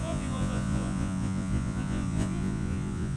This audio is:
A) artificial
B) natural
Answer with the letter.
A